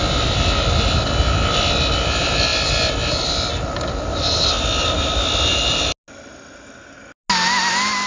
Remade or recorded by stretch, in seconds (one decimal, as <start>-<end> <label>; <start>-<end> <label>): 0.0-8.1 recorded